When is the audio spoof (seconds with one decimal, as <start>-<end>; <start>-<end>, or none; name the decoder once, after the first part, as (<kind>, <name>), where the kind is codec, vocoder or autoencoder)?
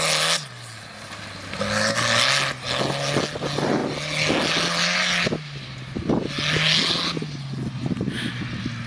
none